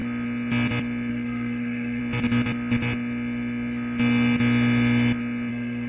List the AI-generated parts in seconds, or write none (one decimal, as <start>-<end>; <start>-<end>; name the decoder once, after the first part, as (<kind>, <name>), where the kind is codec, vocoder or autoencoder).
1.1-2.0 (codec, SNAC); 5.5-5.9